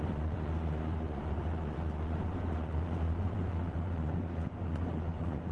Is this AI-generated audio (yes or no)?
yes